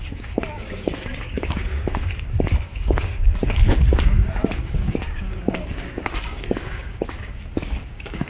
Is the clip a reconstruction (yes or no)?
yes